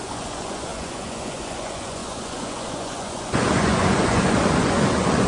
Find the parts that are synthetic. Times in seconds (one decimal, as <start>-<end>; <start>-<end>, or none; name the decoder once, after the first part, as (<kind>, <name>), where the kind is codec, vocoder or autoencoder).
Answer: 0.0-5.3 (vocoder, Vocos)